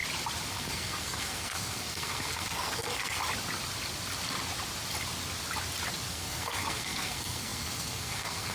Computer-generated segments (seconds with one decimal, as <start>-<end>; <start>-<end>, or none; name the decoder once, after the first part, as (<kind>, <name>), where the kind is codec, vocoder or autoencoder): 0.5-3.2 (codec, SNAC); 6.1-8.5